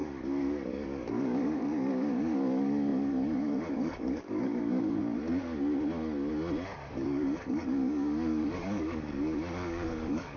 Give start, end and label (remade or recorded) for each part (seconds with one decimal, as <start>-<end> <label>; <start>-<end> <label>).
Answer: 0.0-5.0 remade; 5.0-6.9 recorded; 6.9-10.4 remade